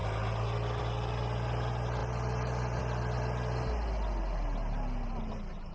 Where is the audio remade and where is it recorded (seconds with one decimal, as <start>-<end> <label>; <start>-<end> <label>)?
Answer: 0.0-5.7 recorded